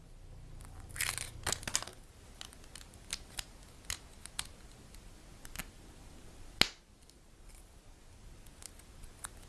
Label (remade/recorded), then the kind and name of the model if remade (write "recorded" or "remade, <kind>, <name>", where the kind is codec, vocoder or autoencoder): recorded